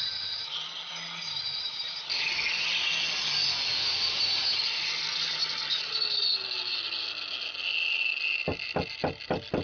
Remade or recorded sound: recorded